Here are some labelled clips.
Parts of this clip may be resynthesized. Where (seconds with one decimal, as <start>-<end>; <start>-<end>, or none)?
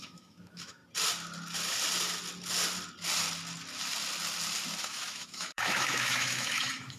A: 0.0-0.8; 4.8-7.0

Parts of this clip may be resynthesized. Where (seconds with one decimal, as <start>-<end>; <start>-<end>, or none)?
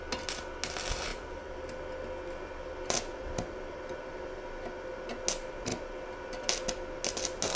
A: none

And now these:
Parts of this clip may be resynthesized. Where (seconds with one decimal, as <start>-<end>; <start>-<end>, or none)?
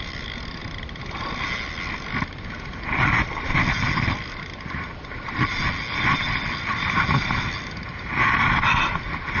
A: none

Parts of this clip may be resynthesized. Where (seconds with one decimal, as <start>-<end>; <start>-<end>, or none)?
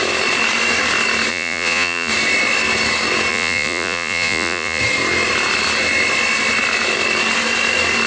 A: 1.3-2.1; 3.3-4.8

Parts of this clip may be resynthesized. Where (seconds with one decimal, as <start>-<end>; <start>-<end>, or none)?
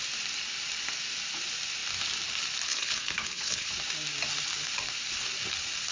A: 2.7-3.7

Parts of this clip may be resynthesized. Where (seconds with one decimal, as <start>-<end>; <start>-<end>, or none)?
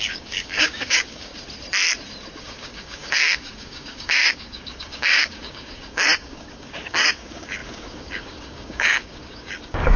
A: 0.0-1.3; 2.4-10.0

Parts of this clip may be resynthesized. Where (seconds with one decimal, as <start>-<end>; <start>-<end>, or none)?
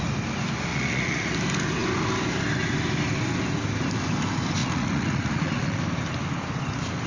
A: 0.7-1.3; 4.6-5.8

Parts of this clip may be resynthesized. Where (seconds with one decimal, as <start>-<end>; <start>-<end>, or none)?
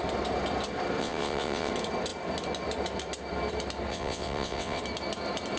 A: 1.0-1.7; 3.9-4.8